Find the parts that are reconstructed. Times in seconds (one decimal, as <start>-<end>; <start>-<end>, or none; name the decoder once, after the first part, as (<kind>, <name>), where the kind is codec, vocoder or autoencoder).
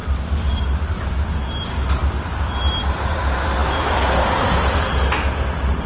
none